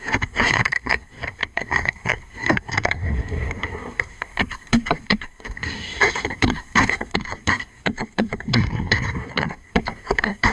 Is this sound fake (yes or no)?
yes